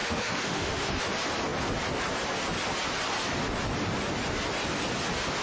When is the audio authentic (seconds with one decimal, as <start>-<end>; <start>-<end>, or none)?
1.0-5.4